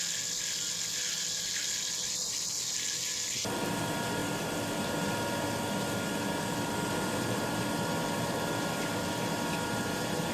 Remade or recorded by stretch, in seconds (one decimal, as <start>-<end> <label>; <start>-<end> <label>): 0.0-10.3 recorded